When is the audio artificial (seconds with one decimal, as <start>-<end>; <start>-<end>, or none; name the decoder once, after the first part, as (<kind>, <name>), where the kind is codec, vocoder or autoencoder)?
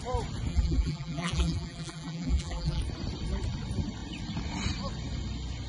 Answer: 0.5-2.8 (vocoder, BigVGAN v2)